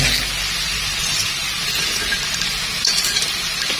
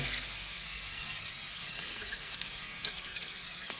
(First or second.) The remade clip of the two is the second